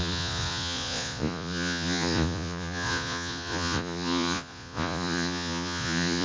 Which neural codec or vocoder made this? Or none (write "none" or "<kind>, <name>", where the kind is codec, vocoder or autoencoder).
vocoder, Vocos